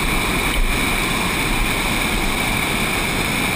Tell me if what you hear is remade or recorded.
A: recorded